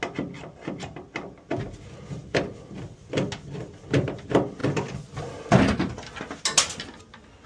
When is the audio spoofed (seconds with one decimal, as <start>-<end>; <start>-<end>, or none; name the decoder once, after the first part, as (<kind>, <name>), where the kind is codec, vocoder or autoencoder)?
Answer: none